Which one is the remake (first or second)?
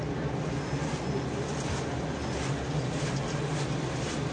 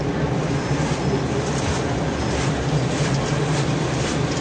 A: second